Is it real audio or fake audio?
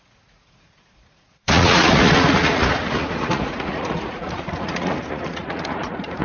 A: fake